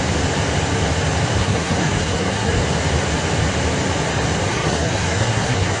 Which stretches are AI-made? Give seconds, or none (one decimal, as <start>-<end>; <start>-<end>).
1.4-2.6; 4.5-5.8